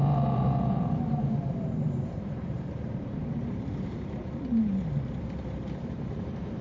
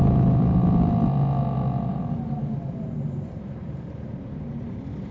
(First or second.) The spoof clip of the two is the first